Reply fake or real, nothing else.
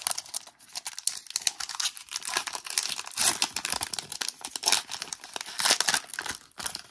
real